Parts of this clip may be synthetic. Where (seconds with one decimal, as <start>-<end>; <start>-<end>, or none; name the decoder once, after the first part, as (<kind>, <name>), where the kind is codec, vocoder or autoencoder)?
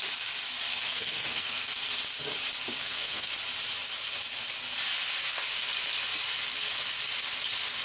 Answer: 0.7-1.8 (codec, SNAC); 2.8-3.3